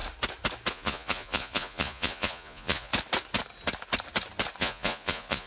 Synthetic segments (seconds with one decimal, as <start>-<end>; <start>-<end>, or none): 0.7-2.9; 4.6-5.5